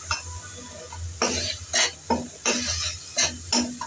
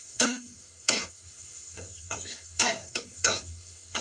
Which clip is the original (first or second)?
first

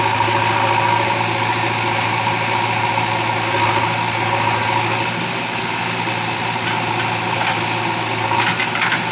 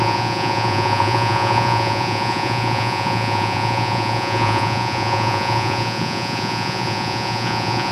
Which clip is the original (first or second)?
first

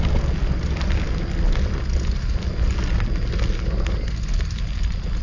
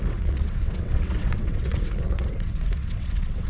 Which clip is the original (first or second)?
first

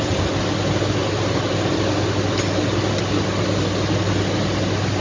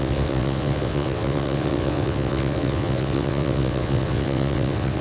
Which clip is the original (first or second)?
first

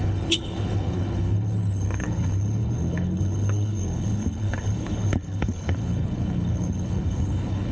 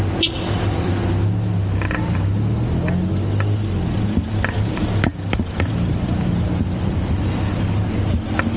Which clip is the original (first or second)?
second